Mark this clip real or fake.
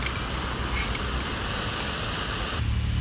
real